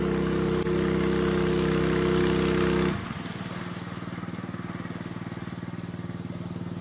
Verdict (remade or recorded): recorded